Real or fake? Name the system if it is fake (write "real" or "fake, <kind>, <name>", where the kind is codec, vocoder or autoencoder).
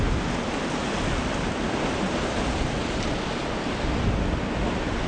real